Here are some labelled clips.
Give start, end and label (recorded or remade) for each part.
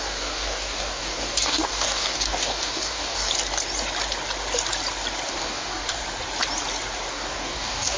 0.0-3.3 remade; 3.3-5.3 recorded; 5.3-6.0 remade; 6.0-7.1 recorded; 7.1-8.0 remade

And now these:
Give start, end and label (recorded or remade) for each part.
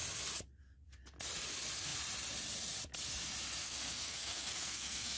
0.0-3.6 recorded; 3.6-5.2 remade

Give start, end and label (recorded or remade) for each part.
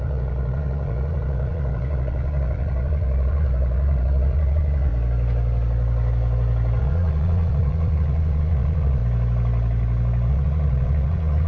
0.0-4.9 remade; 4.9-6.8 recorded; 6.8-9.0 remade; 9.0-10.3 recorded; 10.3-11.5 remade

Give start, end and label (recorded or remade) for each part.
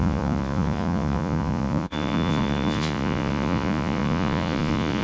0.0-5.0 remade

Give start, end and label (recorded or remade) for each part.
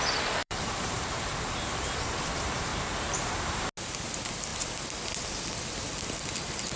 0.0-0.4 recorded; 0.4-1.5 remade; 1.5-2.7 recorded; 2.7-3.6 remade; 3.6-6.8 recorded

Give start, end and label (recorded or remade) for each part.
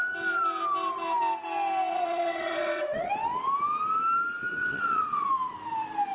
0.0-1.9 recorded; 1.9-3.1 remade; 3.1-4.6 recorded; 4.6-5.3 remade; 5.3-6.1 recorded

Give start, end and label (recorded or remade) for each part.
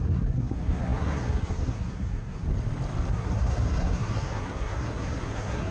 0.0-2.5 remade; 2.5-3.1 recorded; 3.1-5.7 remade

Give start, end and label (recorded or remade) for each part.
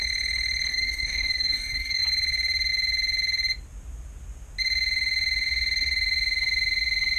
0.0-0.7 recorded; 0.7-2.0 remade; 2.0-7.2 recorded